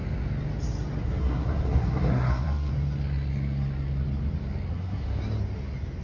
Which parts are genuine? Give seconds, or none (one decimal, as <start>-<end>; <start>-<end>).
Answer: 0.0-1.0; 2.7-4.7; 5.2-6.0